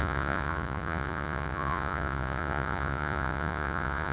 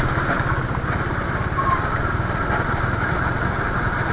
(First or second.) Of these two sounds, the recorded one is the second